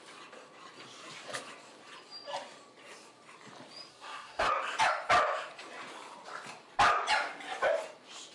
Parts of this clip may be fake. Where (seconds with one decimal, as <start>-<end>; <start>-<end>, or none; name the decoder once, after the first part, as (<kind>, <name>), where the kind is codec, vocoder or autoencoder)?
3.9-4.5 (codec, SNAC)